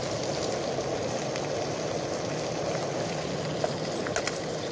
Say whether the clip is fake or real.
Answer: real